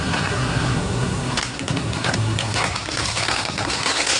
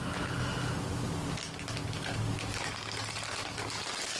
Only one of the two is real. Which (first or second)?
second